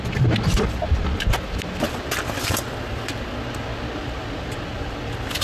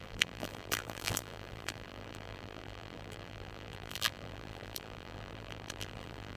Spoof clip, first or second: second